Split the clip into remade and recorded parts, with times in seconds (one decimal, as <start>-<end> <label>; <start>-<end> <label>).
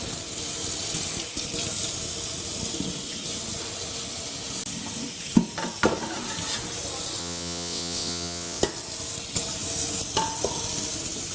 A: 0.0-7.2 recorded; 7.2-8.6 remade; 8.6-11.3 recorded